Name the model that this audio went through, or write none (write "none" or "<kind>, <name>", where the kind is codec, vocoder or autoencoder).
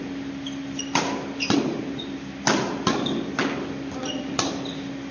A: none